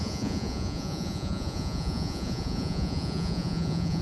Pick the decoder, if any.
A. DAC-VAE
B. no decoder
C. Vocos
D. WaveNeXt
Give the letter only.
C